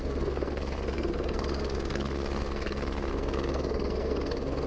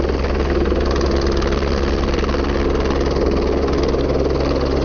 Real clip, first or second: second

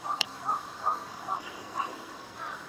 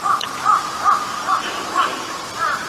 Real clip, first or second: second